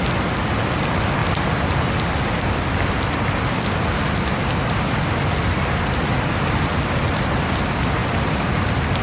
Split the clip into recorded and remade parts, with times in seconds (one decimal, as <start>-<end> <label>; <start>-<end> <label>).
0.0-9.0 recorded